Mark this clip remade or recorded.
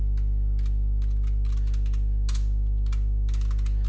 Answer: recorded